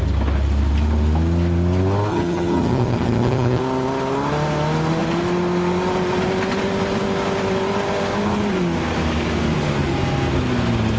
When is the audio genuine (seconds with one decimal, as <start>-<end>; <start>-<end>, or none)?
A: 0.0-2.1; 3.6-11.0